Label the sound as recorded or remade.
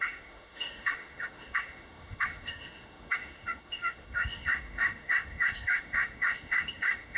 remade